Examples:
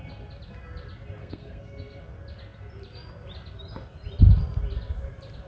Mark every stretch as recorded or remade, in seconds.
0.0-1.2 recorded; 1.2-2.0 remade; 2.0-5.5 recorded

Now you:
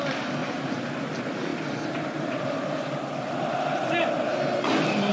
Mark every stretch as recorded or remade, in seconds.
0.0-0.4 recorded; 0.4-0.9 remade; 0.9-1.5 recorded; 1.5-3.8 remade; 3.8-5.1 recorded

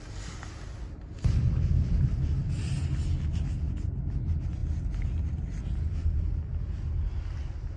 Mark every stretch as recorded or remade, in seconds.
0.0-7.8 recorded

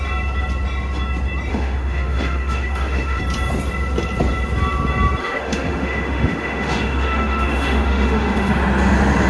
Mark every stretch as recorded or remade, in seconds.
0.0-1.5 recorded; 1.5-3.2 remade; 3.2-5.2 recorded; 5.2-8.5 remade; 8.5-9.3 recorded